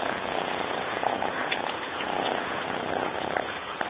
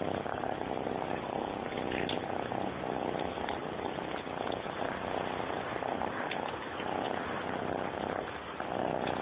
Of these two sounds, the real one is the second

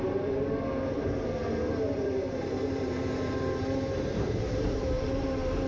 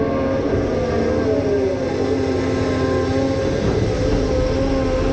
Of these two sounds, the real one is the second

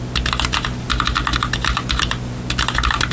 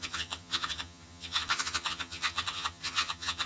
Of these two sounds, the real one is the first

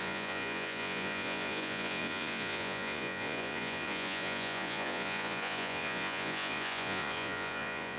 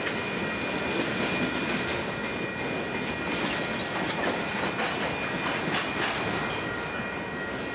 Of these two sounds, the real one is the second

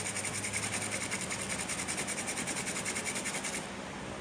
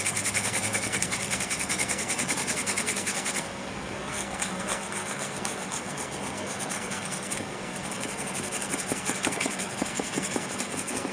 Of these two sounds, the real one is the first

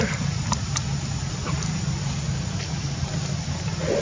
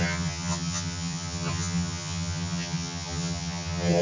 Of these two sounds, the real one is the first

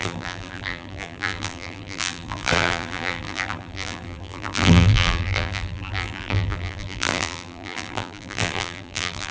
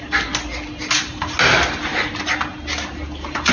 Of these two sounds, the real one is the second